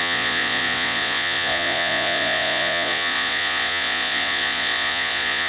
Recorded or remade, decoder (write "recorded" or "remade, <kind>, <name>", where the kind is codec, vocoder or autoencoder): remade, vocoder, Vocos